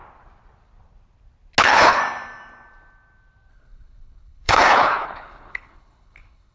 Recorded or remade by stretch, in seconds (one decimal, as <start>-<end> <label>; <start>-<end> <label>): 0.0-1.6 recorded; 1.6-2.0 remade; 2.0-3.5 recorded; 3.5-6.5 remade